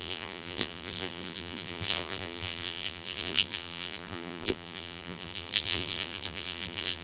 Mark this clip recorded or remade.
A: remade